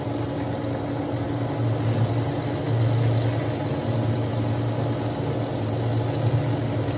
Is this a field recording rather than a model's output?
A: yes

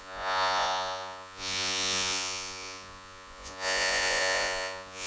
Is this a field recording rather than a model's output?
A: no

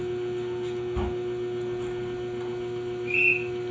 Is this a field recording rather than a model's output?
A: yes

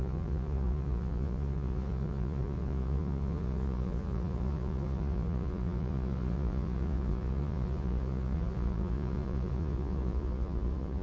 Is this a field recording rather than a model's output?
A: no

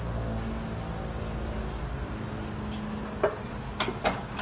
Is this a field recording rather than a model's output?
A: yes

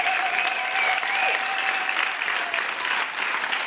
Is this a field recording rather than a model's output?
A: yes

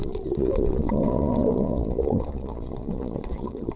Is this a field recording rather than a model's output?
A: no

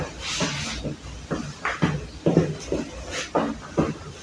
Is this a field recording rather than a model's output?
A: yes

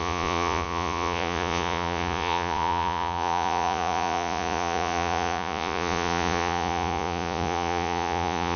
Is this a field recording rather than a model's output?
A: no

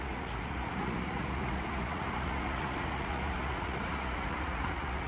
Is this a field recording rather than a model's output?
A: no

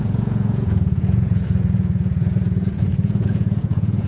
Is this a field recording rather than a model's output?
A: no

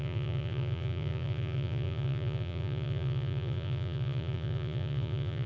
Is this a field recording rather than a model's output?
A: no